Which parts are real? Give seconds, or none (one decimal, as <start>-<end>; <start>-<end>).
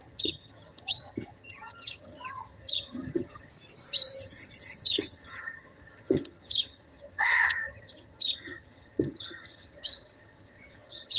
3.5-4.2